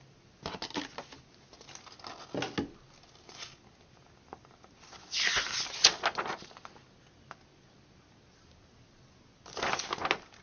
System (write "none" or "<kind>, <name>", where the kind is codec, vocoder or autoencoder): none